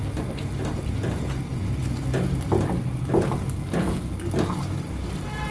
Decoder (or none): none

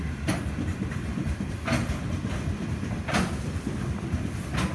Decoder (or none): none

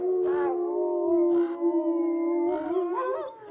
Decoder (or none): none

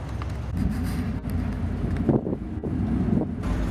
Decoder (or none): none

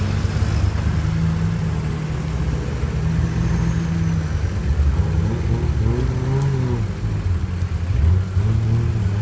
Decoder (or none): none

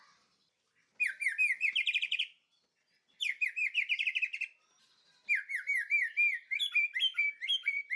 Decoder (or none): none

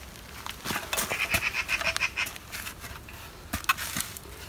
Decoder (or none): none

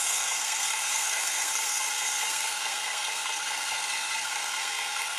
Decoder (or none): codec, SNAC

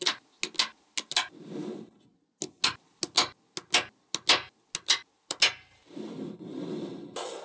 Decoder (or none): none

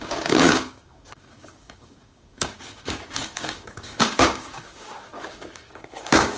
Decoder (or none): codec, DAC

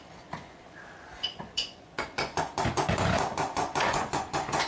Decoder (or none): vocoder, Vocos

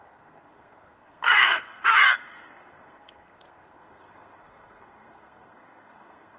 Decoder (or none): codec, SNAC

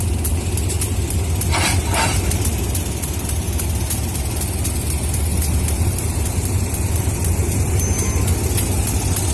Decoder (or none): none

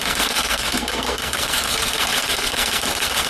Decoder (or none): codec, SNAC